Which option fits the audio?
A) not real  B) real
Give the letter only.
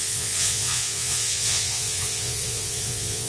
A